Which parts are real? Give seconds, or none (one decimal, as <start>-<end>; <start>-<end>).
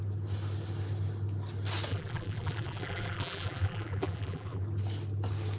0.0-1.9; 4.6-5.6